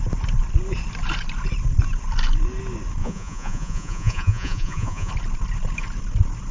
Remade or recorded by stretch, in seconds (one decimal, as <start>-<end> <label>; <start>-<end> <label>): 0.0-3.0 recorded; 3.0-5.1 remade; 5.1-6.5 recorded